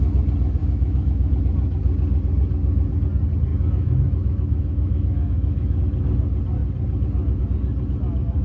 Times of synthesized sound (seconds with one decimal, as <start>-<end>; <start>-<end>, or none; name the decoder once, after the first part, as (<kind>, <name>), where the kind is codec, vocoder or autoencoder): 0.6-1.3 (autoencoder, DAC-VAE); 3.5-5.8